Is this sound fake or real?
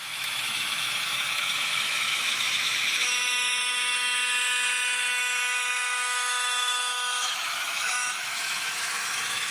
fake